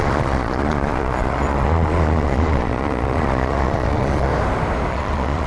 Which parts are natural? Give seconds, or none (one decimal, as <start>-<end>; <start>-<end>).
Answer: 4.3-4.9